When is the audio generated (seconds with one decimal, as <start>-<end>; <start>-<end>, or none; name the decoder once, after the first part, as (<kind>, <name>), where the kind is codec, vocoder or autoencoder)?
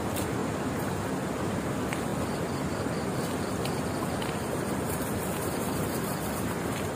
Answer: none